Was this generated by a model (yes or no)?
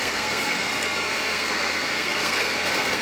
yes